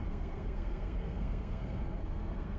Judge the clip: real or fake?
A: fake